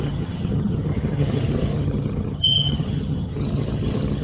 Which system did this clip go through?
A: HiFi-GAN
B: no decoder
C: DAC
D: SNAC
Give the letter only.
A